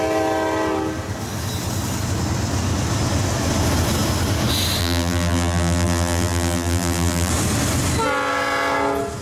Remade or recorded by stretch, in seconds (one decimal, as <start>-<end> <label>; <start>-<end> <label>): 0.0-4.8 recorded; 4.8-7.3 remade; 7.3-9.2 recorded